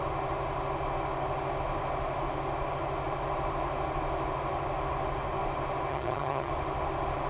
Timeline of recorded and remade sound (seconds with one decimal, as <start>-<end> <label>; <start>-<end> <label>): 0.0-5.9 recorded; 5.9-6.5 remade; 6.5-7.3 recorded